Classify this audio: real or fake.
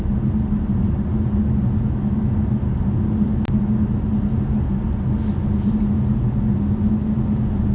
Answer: real